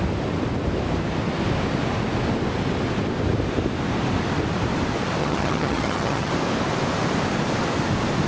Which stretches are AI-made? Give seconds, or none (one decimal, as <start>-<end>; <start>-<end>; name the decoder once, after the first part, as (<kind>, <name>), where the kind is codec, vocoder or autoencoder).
5.2-6.3 (vocoder, HiFi-GAN)